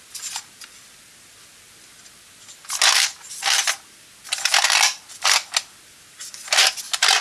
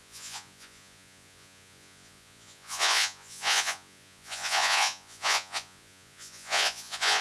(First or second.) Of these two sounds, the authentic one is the first